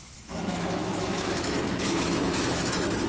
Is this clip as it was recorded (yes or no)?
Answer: no